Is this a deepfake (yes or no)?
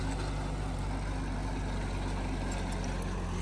no